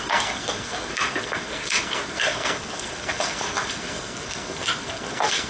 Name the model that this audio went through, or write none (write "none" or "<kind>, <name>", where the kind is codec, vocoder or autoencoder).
codec, SNAC